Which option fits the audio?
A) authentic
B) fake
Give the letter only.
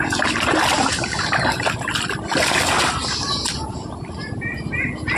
A